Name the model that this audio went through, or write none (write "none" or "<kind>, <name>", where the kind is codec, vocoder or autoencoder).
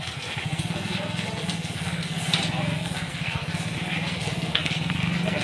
codec, SNAC